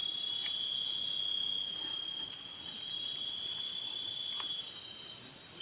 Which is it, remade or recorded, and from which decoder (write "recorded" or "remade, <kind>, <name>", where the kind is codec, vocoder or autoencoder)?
recorded